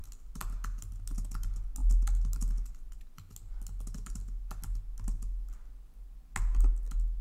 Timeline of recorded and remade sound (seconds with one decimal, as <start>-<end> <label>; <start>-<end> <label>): 0.0-7.2 recorded